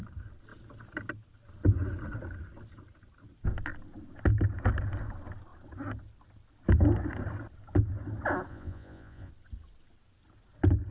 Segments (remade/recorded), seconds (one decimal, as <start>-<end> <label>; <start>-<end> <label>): 0.0-8.5 recorded; 8.5-9.3 remade; 9.3-10.9 recorded